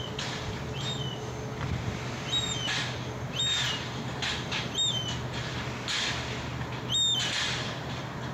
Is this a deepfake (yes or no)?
no